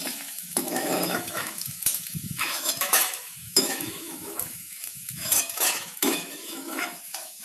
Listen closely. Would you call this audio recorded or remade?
remade